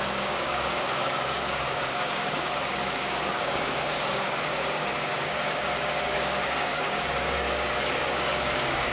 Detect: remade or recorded remade